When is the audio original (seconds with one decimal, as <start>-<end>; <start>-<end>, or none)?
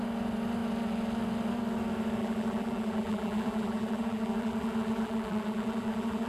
0.0-2.2